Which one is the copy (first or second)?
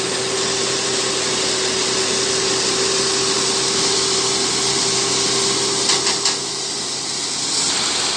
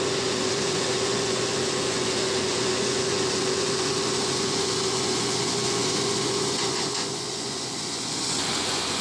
second